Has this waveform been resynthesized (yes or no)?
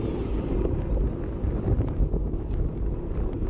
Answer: no